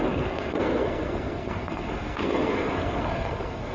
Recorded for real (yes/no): no